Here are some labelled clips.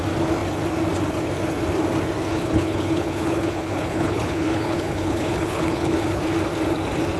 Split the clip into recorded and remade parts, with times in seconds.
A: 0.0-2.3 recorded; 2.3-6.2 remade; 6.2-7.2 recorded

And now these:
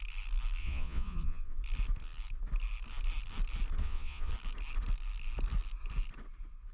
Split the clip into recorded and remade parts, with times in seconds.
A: 0.0-0.6 recorded; 0.6-1.6 remade; 1.6-3.8 recorded; 3.8-4.3 remade; 4.3-6.7 recorded

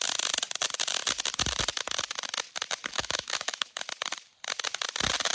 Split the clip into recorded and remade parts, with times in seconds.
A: 0.0-2.9 recorded; 2.9-3.8 remade; 3.8-5.3 recorded

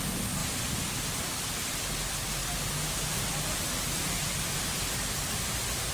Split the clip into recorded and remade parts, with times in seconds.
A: 0.0-0.4 recorded; 0.4-1.2 remade; 1.2-5.9 recorded

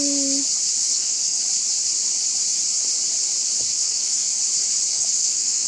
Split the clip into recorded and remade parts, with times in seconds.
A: 0.0-0.8 recorded; 0.8-1.4 remade; 1.4-3.7 recorded; 3.7-4.4 remade; 4.4-4.9 recorded; 4.9-5.7 remade

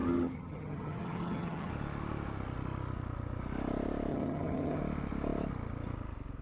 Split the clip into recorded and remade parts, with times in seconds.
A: 0.0-1.7 remade; 1.7-4.1 recorded; 4.1-4.8 remade; 4.8-6.4 recorded

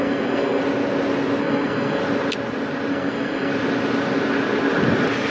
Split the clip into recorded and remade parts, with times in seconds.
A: 0.0-0.6 remade; 0.6-1.4 recorded; 1.4-2.0 remade; 2.0-2.9 recorded; 2.9-3.5 remade; 3.5-5.3 recorded

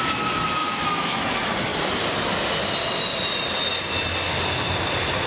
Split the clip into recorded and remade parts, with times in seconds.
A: 0.0-0.6 recorded; 0.6-1.2 remade; 1.2-5.3 recorded